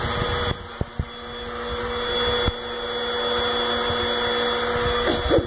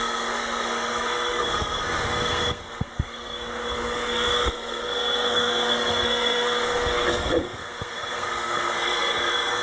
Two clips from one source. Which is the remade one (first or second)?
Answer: second